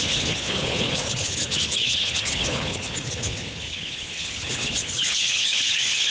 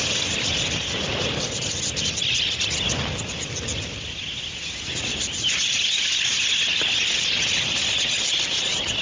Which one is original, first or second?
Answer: second